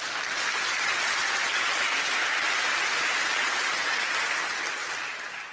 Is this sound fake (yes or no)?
no